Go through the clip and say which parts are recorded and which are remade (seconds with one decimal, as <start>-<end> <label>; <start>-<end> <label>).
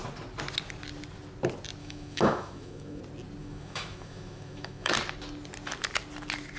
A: 0.0-1.8 recorded; 1.8-3.0 remade; 3.0-3.4 recorded; 3.4-4.9 remade; 4.9-6.6 recorded